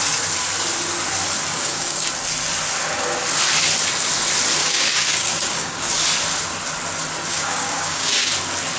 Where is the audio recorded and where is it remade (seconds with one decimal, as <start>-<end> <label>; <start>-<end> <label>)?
0.0-1.5 recorded; 1.5-2.1 remade; 2.1-4.6 recorded; 4.6-5.9 remade; 5.9-7.3 recorded; 7.3-8.3 remade; 8.3-8.8 recorded